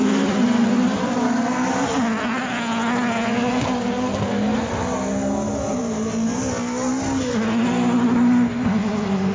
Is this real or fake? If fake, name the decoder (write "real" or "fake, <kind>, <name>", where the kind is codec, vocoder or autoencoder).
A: real